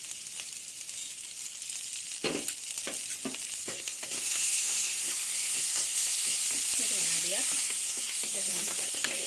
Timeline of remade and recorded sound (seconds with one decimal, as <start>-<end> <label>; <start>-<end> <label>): 0.0-3.6 recorded; 3.6-6.4 remade; 6.4-7.6 recorded; 7.6-9.3 remade